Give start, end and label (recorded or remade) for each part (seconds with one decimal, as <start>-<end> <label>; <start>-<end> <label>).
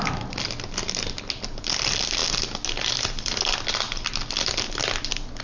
0.0-5.4 recorded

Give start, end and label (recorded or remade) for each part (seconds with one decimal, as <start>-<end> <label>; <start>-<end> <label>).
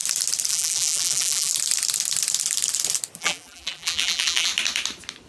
0.0-0.5 recorded; 0.5-1.5 remade; 1.5-3.2 recorded; 3.2-4.5 remade; 4.5-5.3 recorded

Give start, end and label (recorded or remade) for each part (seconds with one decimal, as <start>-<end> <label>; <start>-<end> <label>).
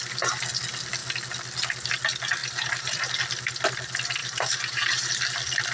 0.0-2.4 recorded; 2.4-3.1 remade; 3.1-4.2 recorded; 4.2-5.1 remade; 5.1-5.7 recorded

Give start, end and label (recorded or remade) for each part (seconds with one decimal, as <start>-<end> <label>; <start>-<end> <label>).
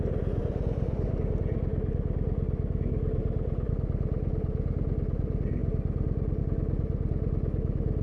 0.0-0.4 recorded; 0.4-1.1 remade; 1.1-3.2 recorded; 3.2-3.7 remade; 3.7-8.0 recorded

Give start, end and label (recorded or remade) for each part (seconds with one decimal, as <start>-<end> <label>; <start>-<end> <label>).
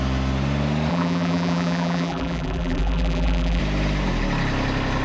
0.0-0.9 recorded; 0.9-3.6 remade; 3.6-5.0 recorded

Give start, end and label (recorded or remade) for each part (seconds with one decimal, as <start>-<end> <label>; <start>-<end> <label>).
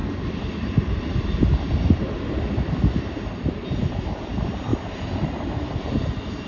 0.0-4.7 recorded; 4.7-6.0 remade; 6.0-6.5 recorded